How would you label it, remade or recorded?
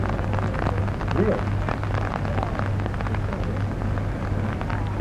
recorded